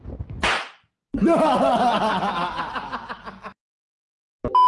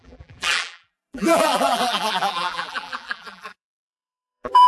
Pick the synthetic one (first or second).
second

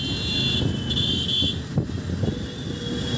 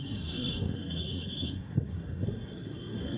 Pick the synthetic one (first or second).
second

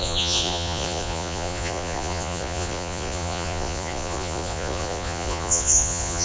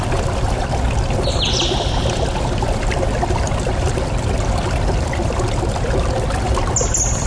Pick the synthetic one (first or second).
first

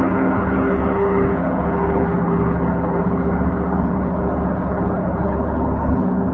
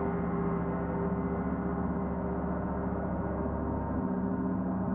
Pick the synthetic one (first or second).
first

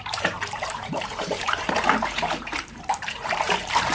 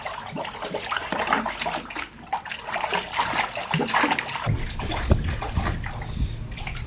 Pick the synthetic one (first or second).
first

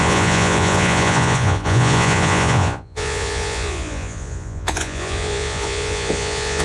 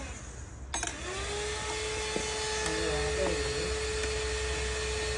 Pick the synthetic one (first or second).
first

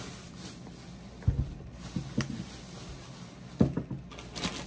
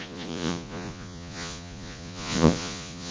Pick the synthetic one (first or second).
second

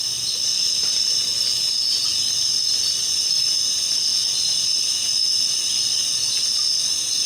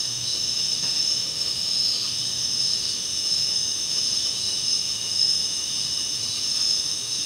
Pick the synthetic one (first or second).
second